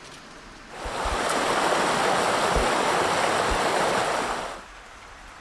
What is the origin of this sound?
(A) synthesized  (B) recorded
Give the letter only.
B